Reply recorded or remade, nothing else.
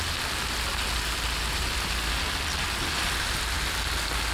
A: recorded